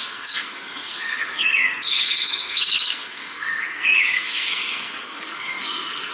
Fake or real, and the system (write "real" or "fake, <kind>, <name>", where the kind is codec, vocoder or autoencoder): fake, codec, SNAC